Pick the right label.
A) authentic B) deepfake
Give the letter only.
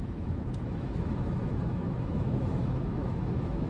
B